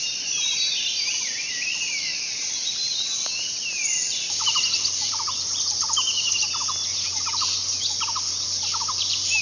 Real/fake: real